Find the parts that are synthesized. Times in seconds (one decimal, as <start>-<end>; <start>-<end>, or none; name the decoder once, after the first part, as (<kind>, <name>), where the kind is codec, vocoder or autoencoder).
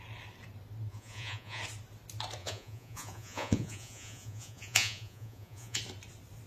0.9-1.6 (vocoder, Vocos); 2.4-5.8